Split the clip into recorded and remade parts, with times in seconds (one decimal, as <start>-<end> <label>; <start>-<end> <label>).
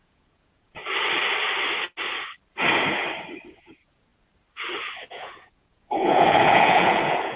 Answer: 0.0-0.8 remade; 0.8-3.5 recorded; 3.5-4.1 remade; 4.1-5.1 recorded; 5.1-7.4 remade